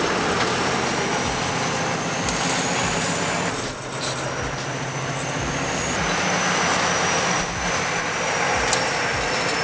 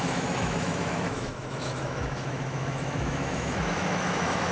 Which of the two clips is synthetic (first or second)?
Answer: second